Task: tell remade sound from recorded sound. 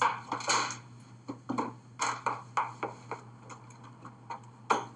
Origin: recorded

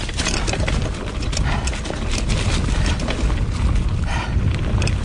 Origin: recorded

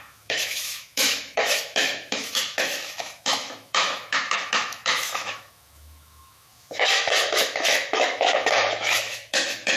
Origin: remade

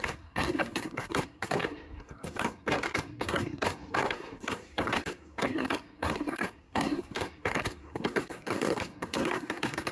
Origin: remade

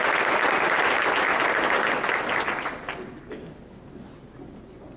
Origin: recorded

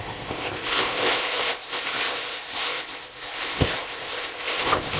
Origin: remade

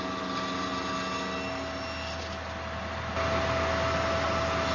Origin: recorded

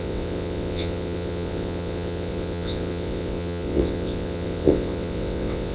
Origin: remade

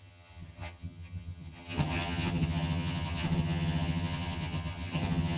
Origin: remade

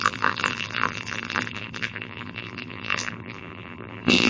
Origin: remade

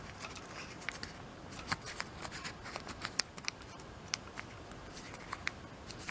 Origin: recorded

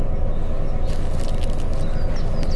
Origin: recorded